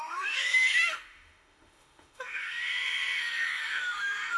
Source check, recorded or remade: remade